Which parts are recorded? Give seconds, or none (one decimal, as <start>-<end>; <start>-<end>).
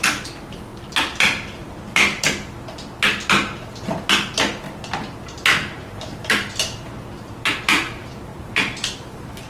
0.0-5.8; 7.3-8.3